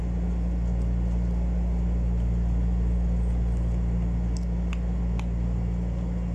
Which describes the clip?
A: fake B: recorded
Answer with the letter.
B